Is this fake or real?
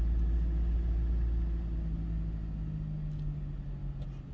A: real